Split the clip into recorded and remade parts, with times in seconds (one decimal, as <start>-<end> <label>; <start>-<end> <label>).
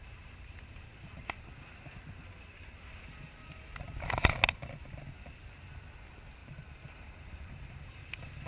0.0-6.4 recorded; 6.4-8.0 remade; 8.0-8.5 recorded